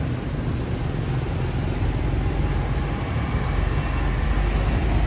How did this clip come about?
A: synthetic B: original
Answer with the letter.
B